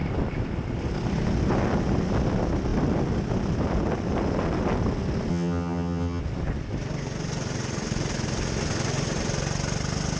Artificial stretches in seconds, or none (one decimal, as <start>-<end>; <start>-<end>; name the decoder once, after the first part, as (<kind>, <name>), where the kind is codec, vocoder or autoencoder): 5.3-6.2 (vocoder, HiFi-GAN)